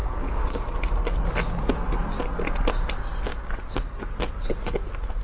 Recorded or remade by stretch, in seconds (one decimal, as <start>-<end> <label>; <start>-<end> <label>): 0.0-5.2 recorded